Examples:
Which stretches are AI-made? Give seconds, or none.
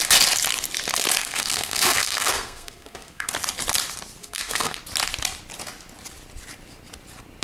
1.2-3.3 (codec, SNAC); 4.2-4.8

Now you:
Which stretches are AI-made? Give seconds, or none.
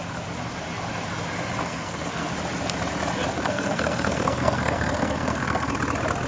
1.6-2.3 (codec, SNAC); 3.3-5.7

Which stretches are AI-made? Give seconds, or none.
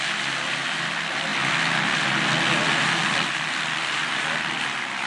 none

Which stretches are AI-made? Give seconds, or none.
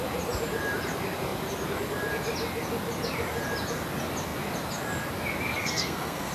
5.6-6.3 (codec, SNAC)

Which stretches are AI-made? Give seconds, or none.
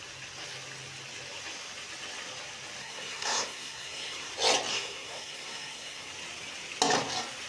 2.8-4.3 (codec, SNAC); 4.7-6.1